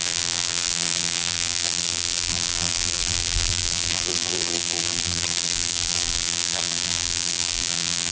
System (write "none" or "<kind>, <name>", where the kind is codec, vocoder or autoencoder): vocoder, BigVGAN v2